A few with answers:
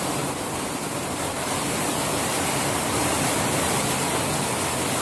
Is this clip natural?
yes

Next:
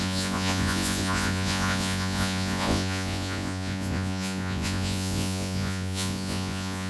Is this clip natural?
no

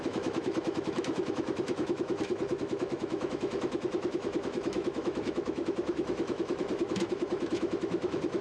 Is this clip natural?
no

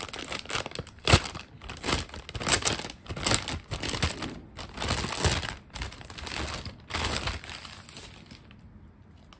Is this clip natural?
yes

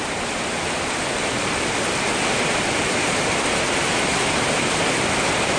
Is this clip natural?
yes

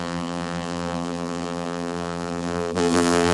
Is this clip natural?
no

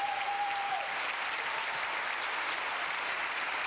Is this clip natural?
yes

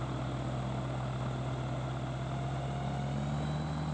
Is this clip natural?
yes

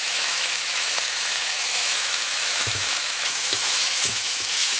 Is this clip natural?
no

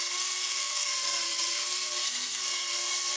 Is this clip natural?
no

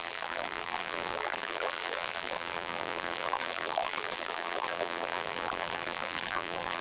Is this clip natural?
no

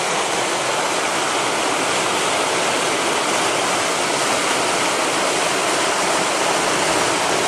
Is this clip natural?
yes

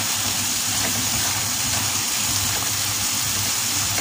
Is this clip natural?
yes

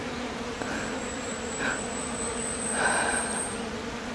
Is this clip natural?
yes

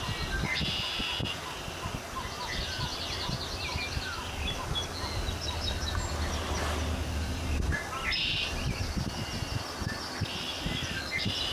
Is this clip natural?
yes